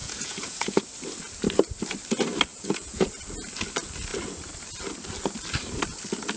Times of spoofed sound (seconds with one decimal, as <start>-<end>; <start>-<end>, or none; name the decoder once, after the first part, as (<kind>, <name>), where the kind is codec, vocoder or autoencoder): 0.0-0.8 (vocoder, Vocos); 2.5-3.1